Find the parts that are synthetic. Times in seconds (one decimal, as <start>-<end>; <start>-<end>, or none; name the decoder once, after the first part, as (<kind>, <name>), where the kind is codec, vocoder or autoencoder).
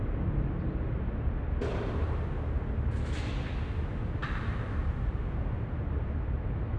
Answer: none